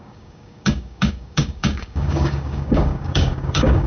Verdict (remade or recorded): remade